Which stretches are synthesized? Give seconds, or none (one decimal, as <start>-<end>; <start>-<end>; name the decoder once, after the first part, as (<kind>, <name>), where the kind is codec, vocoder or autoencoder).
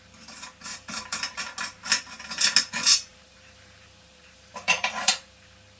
0.7-1.4 (vocoder, BigVGAN v2); 3.1-5.1